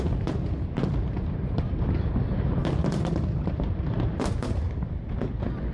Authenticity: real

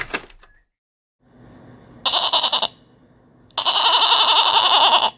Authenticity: real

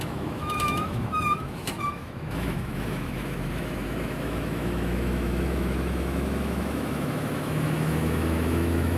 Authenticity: fake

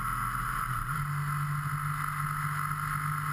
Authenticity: real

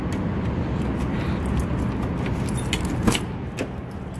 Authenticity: real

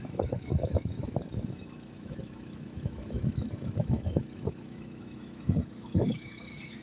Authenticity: fake